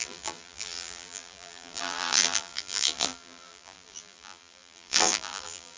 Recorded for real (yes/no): no